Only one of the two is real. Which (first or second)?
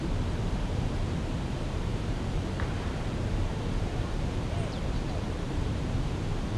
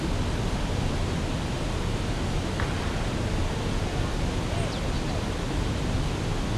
second